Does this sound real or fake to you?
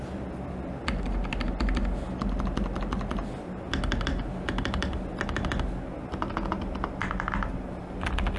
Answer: real